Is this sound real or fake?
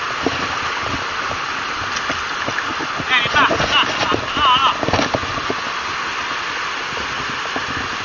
real